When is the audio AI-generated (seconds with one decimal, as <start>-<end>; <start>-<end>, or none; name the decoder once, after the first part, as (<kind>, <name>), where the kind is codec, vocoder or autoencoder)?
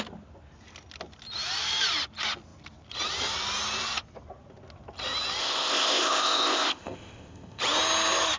5.4-7.6 (codec, ZipCodec)